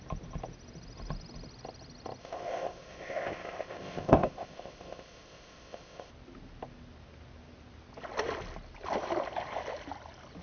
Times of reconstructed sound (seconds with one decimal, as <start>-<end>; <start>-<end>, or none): 2.2-6.1